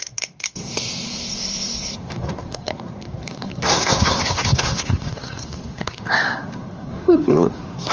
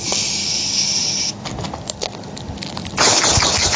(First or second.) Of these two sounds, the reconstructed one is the first